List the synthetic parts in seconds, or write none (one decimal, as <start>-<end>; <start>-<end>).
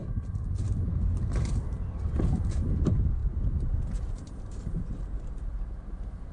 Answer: 3.2-5.5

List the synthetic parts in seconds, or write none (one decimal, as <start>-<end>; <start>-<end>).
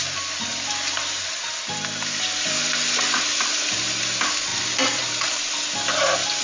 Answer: 0.5-3.2; 4.5-5.6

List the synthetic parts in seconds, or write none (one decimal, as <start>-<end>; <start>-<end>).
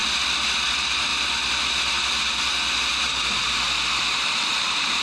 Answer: 0.7-1.1; 2.8-3.4; 4.0-5.0